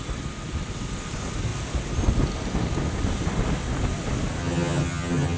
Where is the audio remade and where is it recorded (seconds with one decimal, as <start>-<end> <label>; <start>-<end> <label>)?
0.0-4.4 recorded; 4.4-5.4 remade